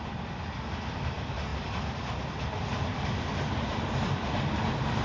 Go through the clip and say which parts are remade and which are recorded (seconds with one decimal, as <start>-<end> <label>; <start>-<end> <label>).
0.0-5.0 recorded